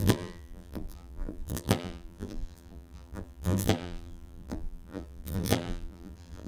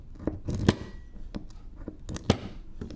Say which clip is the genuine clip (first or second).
second